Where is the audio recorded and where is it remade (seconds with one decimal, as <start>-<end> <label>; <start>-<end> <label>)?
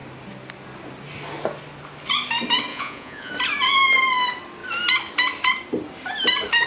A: 0.0-2.7 recorded; 2.7-3.3 remade; 3.3-6.7 recorded